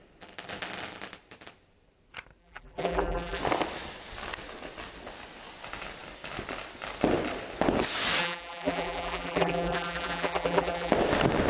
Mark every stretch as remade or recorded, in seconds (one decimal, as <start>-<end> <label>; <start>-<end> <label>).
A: 0.0-2.4 recorded; 2.4-3.4 remade; 3.4-8.2 recorded; 8.2-10.9 remade; 10.9-11.5 recorded